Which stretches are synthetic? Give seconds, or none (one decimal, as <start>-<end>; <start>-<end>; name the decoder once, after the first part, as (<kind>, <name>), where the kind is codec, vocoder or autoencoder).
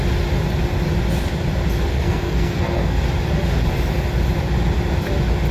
1.9-3.0 (codec, SNAC)